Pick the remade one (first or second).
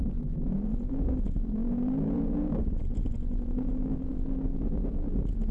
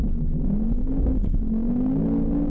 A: first